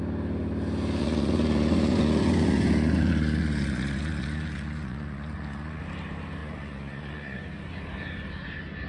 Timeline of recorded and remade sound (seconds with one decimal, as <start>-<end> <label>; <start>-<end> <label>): 0.0-1.0 recorded; 1.0-5.8 remade; 5.8-6.4 recorded; 6.4-7.4 remade; 7.4-8.9 recorded